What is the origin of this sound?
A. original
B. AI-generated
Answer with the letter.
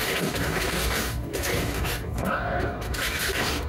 B